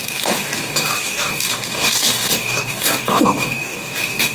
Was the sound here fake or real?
fake